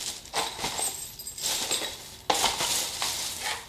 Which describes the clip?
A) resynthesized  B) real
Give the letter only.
B